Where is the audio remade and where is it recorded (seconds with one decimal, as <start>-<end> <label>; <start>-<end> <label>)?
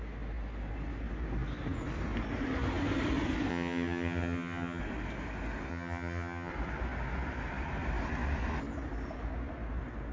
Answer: 0.0-3.5 recorded; 3.5-4.8 remade; 4.8-5.7 recorded; 5.7-6.5 remade; 6.5-10.1 recorded